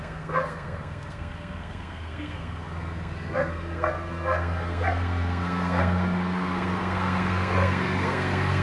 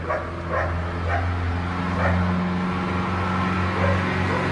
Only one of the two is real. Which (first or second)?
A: second